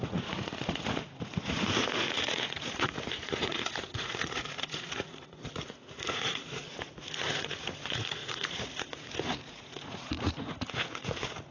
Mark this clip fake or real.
fake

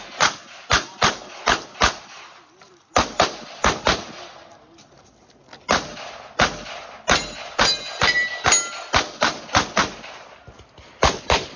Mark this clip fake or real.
real